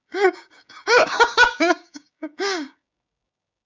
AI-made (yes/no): yes